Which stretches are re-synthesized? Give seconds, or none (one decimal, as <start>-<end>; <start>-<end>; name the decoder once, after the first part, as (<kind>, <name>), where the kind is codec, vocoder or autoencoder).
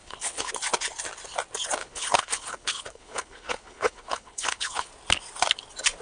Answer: 0.0-0.5 (codec, HILCodec); 1.8-4.9